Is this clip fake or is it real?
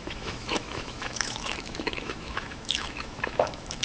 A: fake